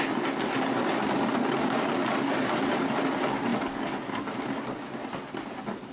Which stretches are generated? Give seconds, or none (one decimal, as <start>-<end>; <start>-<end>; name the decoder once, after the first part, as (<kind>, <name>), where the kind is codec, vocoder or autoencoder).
none